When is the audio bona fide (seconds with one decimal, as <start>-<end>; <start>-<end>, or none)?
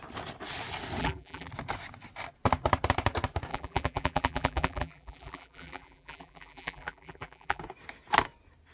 0.0-1.0; 1.5-3.5; 7.6-8.7